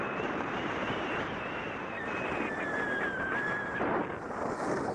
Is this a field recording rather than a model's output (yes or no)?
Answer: yes